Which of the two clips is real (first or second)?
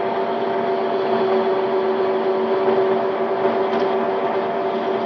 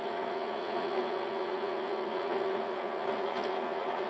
first